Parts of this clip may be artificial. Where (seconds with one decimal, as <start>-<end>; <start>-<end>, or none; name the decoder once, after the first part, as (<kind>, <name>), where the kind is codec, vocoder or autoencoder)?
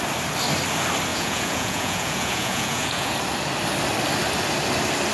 1.1-3.1 (vocoder, Vocos)